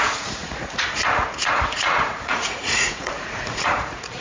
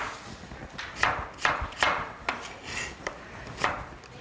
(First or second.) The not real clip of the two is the first